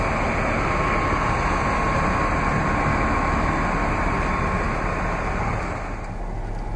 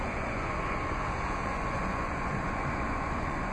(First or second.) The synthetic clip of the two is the second